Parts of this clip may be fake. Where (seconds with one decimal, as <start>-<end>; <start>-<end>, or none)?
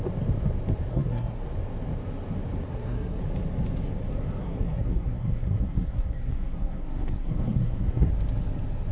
0.9-1.4; 2.7-3.2; 4.4-8.1